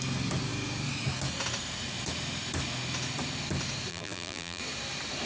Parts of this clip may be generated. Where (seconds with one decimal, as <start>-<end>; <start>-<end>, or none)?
3.9-4.6